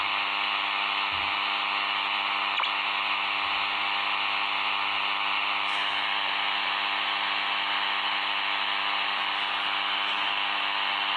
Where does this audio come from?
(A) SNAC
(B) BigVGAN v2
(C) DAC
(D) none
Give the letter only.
D